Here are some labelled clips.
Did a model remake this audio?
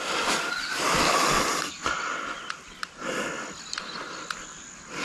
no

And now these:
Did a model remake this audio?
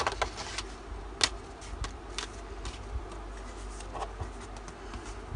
no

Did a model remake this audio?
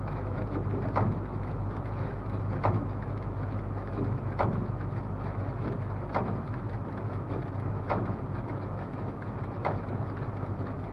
yes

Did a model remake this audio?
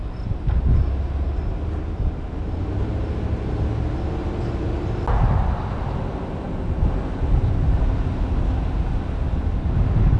no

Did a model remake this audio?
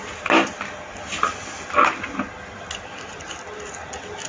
no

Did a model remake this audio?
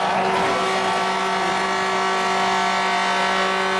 no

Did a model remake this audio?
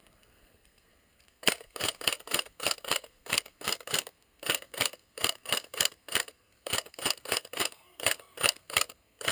yes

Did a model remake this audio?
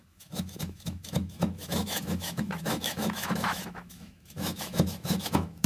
yes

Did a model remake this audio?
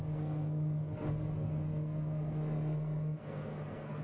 yes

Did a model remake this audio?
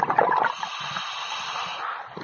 no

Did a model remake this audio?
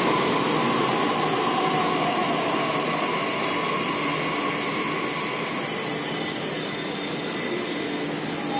no